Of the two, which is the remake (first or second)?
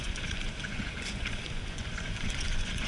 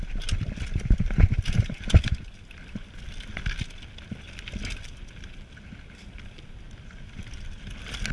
first